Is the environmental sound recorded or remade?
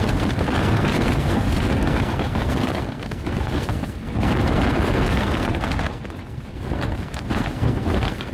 remade